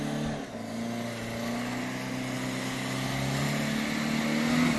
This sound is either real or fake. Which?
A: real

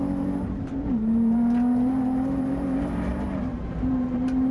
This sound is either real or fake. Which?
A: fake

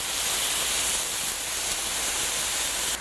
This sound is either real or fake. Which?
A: real